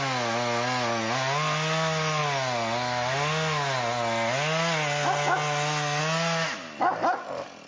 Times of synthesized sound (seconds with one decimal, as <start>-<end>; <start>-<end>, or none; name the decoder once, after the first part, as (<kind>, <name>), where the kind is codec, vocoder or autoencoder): none